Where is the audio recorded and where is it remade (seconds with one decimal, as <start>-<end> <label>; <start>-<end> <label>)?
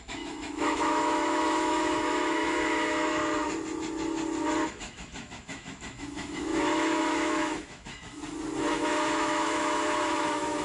0.0-3.2 remade; 3.2-4.7 recorded; 4.7-8.2 remade; 8.2-8.7 recorded; 8.7-10.6 remade